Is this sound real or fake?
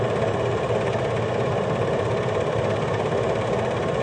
real